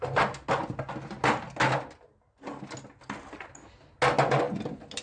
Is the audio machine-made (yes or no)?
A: no